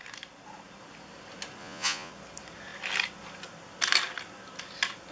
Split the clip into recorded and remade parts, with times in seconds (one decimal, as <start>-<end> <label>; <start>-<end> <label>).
0.0-1.6 recorded; 1.6-2.1 remade; 2.1-5.1 recorded